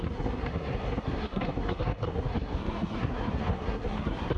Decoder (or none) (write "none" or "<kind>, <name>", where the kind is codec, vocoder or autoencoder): codec, SNAC